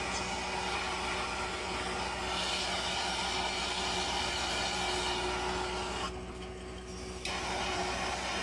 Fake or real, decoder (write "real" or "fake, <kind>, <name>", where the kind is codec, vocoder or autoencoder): real